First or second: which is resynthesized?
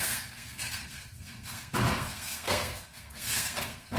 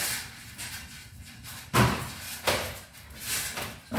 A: first